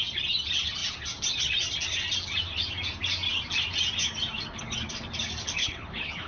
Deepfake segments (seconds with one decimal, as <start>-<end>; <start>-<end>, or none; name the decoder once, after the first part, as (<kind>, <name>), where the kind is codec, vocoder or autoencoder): 5.6-6.3 (codec, HILCodec)